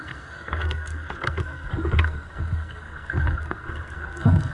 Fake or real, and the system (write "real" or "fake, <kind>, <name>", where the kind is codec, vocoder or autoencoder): fake, codec, SNAC